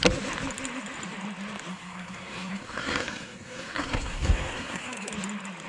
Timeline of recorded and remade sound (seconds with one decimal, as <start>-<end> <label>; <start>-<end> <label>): 0.0-1.7 recorded; 1.7-5.1 remade; 5.1-5.7 recorded